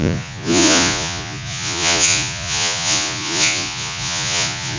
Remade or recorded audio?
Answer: remade